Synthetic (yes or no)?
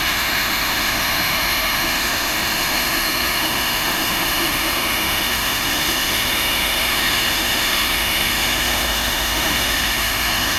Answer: yes